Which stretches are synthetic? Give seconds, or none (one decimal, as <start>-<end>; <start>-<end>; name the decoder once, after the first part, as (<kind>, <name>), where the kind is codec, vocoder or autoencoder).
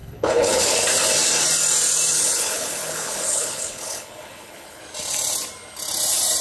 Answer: 0.0-0.8 (codec, HILCodec); 2.1-4.8